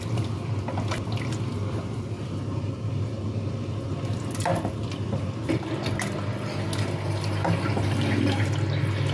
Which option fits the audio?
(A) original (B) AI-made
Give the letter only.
A